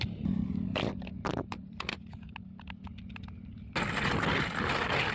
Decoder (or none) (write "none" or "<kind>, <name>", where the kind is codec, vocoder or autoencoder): none